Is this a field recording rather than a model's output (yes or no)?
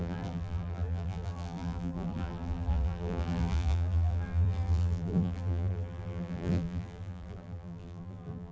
no